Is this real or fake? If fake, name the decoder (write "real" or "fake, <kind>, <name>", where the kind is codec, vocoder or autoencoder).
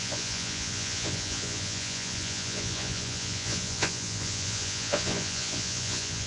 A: fake, vocoder, Vocos